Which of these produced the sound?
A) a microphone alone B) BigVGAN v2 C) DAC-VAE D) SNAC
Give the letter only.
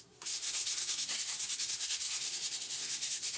D